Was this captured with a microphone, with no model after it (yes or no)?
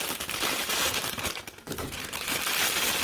no